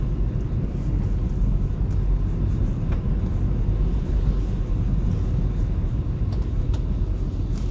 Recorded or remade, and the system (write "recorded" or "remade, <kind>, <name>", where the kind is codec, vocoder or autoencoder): recorded